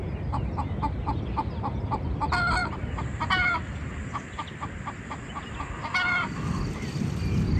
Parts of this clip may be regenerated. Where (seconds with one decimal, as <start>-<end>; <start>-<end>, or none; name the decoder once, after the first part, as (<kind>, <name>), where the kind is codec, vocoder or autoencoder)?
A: none